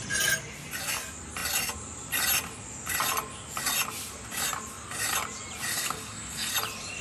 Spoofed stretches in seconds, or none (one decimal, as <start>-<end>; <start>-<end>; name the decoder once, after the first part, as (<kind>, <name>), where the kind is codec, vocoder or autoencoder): 5.7-6.5 (codec, SNAC)